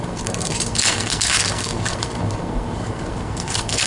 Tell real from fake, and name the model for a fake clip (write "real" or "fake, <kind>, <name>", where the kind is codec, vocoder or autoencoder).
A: fake, codec, SNAC